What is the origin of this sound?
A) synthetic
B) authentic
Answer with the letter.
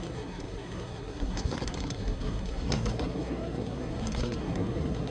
A